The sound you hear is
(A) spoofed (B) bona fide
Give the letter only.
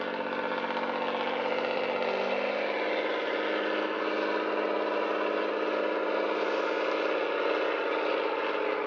B